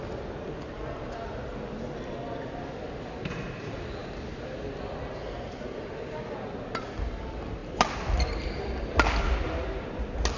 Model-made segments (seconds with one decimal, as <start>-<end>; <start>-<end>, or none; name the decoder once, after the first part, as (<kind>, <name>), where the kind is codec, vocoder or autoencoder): none